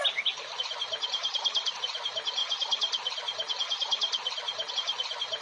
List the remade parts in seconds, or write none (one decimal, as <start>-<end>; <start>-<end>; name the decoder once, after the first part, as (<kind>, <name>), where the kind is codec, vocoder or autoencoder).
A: none